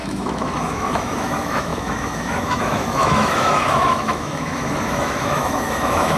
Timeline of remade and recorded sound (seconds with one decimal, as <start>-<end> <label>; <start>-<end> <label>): 0.0-6.2 remade